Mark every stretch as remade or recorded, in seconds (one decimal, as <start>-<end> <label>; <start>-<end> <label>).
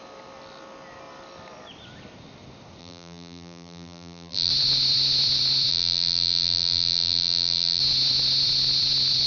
0.0-2.8 recorded; 2.8-4.5 remade; 4.5-5.7 recorded; 5.7-7.8 remade; 7.8-9.3 recorded